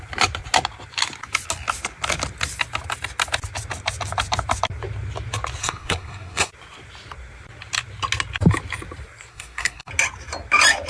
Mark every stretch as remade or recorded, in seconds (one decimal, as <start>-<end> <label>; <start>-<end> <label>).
0.0-5.6 recorded; 5.6-6.5 remade; 6.5-9.3 recorded; 9.3-9.9 remade; 9.9-10.9 recorded